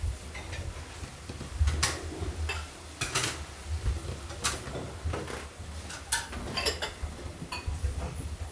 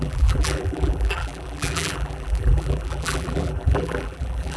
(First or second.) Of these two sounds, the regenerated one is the second